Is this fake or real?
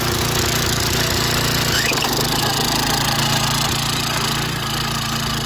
real